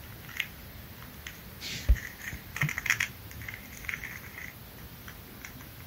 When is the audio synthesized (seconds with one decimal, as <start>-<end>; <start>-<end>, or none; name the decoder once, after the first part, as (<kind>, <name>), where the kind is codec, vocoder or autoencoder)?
1.4-4.0 (vocoder, BigVGAN v2); 4.4-5.0